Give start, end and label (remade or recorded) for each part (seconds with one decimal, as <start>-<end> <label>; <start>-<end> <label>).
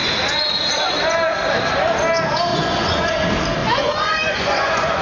0.0-2.5 recorded; 2.5-3.1 remade; 3.1-3.6 recorded; 3.6-5.0 remade